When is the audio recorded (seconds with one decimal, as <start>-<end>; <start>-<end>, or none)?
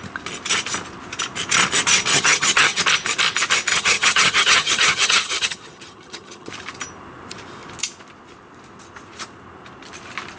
0.0-2.1; 2.8-3.7; 6.5-10.4